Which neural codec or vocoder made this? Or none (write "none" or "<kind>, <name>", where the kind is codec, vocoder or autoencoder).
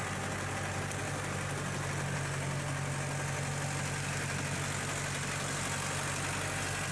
none